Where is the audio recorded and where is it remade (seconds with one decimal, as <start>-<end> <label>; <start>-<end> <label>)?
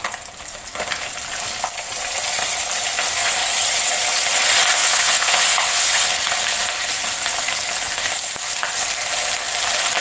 0.0-4.8 recorded; 4.8-6.1 remade; 6.1-10.0 recorded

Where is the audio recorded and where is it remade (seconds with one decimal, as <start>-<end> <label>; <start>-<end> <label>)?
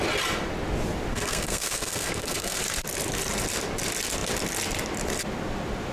0.0-1.1 recorded; 1.1-2.6 remade; 2.6-5.9 recorded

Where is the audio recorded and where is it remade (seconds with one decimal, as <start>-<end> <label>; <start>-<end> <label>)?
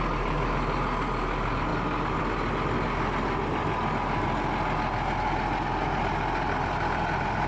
0.0-7.5 recorded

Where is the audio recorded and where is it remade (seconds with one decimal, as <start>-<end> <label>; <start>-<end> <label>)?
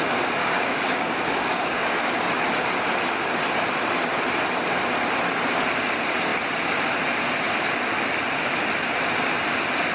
0.0-0.4 recorded; 0.4-2.2 remade; 2.2-9.9 recorded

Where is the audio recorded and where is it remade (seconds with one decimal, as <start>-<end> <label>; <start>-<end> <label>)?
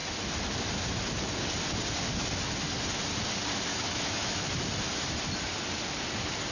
0.0-3.7 recorded; 3.7-4.5 remade; 4.5-6.5 recorded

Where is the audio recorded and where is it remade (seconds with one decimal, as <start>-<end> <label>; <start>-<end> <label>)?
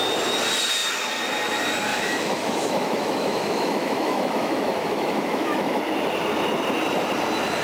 0.0-1.9 recorded; 1.9-5.8 remade; 5.8-7.6 recorded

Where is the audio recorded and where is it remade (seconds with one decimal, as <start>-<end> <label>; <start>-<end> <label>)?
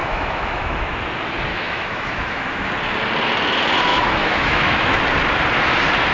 0.0-1.0 remade; 1.0-1.5 recorded; 1.5-2.7 remade; 2.7-3.9 recorded; 3.9-5.0 remade; 5.0-6.1 recorded